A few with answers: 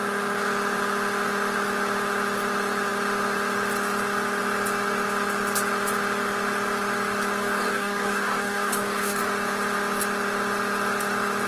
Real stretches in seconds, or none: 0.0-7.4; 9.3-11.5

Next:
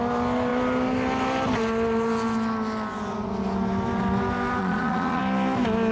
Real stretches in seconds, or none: 0.0-4.6; 5.2-5.9